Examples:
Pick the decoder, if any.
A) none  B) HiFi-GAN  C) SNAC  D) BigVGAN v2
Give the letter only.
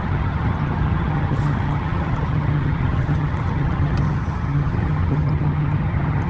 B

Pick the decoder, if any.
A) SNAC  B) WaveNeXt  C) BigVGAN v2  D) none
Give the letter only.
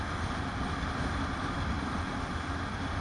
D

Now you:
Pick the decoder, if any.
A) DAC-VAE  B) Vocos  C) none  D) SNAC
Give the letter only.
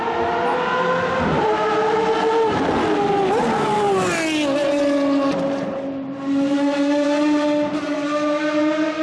C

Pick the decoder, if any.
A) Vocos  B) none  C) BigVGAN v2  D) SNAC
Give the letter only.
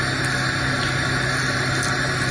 B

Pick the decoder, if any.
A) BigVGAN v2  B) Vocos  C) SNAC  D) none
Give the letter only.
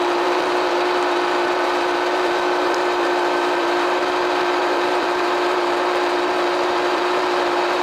A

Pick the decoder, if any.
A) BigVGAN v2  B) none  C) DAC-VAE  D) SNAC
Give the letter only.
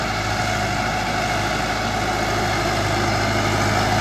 B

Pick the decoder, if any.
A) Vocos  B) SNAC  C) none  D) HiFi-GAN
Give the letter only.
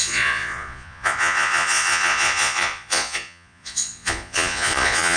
A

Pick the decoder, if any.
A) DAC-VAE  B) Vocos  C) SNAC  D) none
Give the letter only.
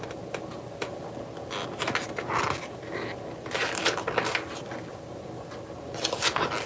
D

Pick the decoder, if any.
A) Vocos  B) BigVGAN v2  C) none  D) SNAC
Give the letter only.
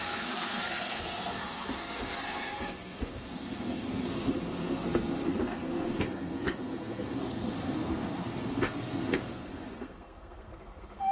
D